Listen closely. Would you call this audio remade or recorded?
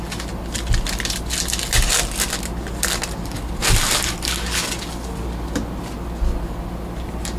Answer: recorded